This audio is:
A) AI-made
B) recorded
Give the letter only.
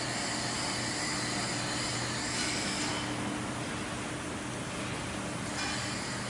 B